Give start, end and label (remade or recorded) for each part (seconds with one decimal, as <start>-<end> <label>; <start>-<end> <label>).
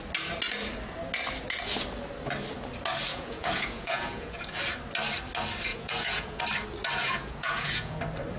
0.0-3.1 recorded; 3.1-4.6 remade; 4.6-5.7 recorded; 5.7-6.4 remade; 6.4-7.0 recorded; 7.0-8.0 remade; 8.0-8.4 recorded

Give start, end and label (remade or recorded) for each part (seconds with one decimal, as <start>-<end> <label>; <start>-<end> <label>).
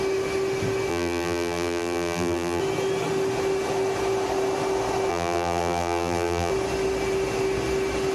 0.0-0.9 recorded; 0.9-2.6 remade; 2.6-5.1 recorded; 5.1-6.5 remade; 6.5-8.1 recorded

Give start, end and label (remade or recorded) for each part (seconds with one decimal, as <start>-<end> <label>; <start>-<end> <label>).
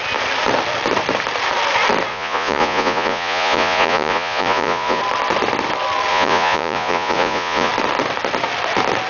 0.0-2.1 recorded; 2.1-5.0 remade; 5.0-6.1 recorded; 6.1-7.7 remade; 7.7-9.1 recorded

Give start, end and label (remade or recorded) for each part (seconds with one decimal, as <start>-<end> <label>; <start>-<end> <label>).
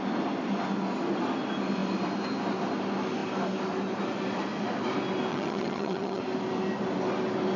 0.0-5.3 recorded; 5.3-6.2 remade; 6.2-7.6 recorded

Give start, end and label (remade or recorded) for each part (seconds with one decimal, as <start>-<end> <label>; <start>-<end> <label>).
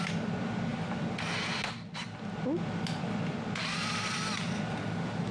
0.0-5.3 recorded